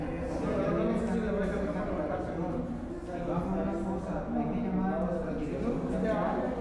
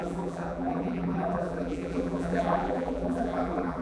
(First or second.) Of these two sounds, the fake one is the second